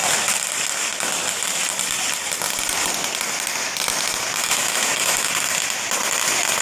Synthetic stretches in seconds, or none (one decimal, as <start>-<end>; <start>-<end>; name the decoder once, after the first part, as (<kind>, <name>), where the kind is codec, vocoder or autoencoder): 4.4-5.3 (autoencoder, DAC-VAE)